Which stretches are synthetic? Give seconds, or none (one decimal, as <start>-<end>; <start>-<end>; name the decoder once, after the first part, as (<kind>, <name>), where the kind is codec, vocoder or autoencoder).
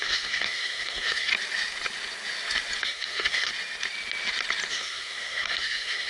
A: 0.0-1.3 (codec, SNAC); 2.8-3.5; 4.7-6.1